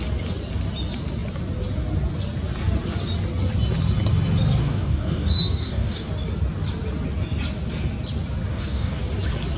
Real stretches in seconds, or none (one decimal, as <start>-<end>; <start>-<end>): 0.0-4.6; 6.1-8.5; 9.0-9.6